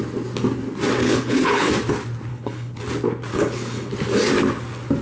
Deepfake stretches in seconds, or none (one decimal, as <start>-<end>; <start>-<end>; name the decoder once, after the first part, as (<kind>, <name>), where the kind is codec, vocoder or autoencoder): 1.0-1.7 (codec, HILCodec); 2.3-2.8; 3.3-3.9